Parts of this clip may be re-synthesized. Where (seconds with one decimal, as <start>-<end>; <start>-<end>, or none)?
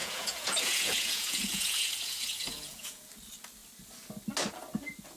0.0-3.1